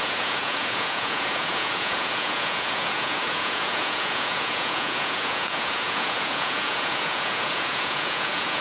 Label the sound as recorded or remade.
remade